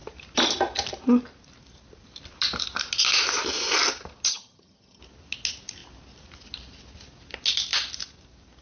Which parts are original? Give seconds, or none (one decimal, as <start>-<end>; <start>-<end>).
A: 0.0-4.3; 5.0-8.6